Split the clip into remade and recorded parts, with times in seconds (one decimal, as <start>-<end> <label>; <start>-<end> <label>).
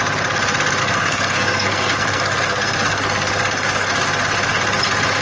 0.0-0.8 recorded; 0.8-3.9 remade; 3.9-5.2 recorded